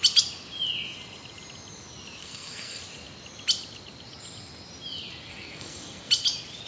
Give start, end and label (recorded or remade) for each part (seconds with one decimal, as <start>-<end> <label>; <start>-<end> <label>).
0.0-2.2 recorded; 2.2-2.8 remade; 2.8-5.3 recorded; 5.3-6.1 remade; 6.1-6.7 recorded